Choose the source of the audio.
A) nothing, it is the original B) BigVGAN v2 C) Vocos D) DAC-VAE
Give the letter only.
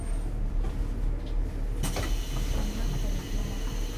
A